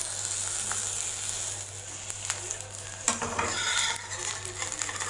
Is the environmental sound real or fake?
real